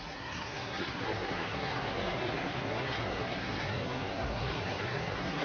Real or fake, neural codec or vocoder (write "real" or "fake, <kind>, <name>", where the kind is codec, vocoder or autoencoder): fake, codec, SNAC